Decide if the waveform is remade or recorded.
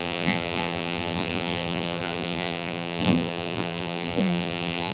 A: remade